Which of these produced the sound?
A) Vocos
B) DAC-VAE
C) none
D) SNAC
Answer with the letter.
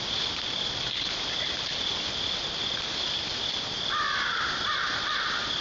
C